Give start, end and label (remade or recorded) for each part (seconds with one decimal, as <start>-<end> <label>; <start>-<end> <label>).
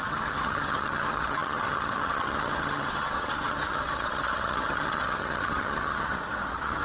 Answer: 0.0-6.8 remade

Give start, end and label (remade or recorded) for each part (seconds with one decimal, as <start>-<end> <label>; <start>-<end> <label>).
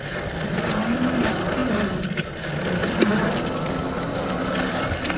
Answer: 0.0-5.2 recorded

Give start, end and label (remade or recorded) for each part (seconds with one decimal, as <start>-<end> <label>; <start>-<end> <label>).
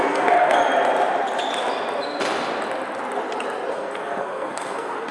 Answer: 0.0-0.6 remade; 0.6-3.7 recorded; 3.7-5.1 remade